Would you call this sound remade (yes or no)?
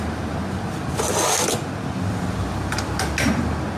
no